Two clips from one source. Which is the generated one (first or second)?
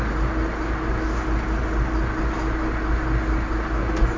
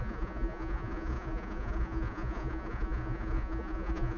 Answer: second